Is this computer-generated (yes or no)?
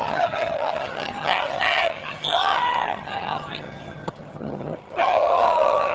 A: yes